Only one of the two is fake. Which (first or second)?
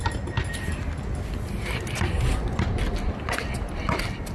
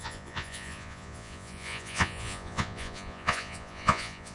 second